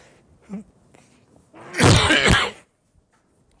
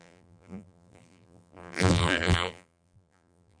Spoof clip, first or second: second